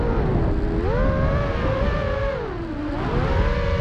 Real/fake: real